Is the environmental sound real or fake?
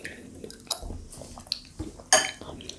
real